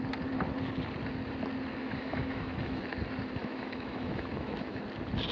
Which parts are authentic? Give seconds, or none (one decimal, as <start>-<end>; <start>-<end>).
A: 0.0-1.8; 2.8-3.4; 4.8-5.3